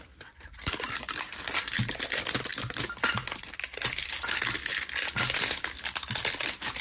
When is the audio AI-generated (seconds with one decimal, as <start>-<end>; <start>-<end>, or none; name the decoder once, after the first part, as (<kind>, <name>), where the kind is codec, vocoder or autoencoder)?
0.0-2.5 (vocoder, BigVGAN v2); 6.1-6.8